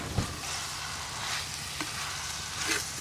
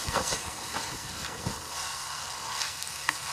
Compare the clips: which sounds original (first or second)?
first